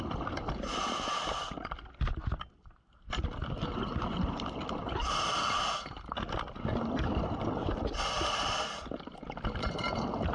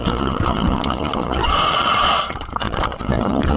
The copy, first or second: second